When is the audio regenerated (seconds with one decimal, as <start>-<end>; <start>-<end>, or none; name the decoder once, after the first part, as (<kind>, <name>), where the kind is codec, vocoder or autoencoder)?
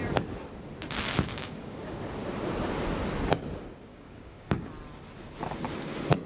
1.3-2.0 (codec, DAC); 3.9-4.7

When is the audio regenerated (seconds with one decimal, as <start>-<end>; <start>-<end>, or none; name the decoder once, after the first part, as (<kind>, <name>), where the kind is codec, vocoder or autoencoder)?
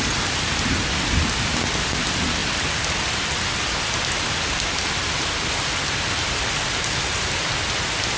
none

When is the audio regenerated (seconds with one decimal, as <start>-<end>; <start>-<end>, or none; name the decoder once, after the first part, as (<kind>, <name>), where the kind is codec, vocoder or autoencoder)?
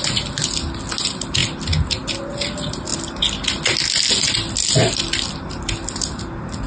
none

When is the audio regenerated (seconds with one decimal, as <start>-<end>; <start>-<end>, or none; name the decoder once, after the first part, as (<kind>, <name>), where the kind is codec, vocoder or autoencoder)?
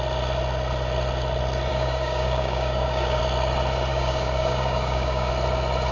1.7-3.2 (codec, DAC); 3.9-5.3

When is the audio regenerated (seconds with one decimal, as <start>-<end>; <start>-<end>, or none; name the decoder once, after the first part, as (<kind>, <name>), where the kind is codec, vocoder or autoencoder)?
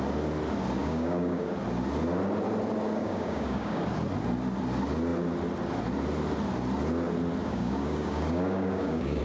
0.8-1.5 (codec, DAC); 3.0-3.8; 7.4-9.2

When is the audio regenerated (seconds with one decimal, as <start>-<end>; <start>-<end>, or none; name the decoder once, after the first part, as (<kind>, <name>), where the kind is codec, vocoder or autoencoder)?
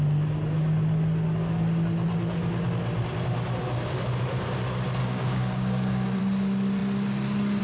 5.0-6.2 (codec, DAC)